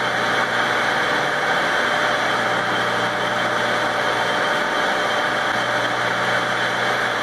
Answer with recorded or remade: recorded